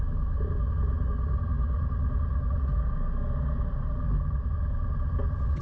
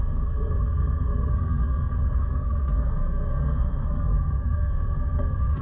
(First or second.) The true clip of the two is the first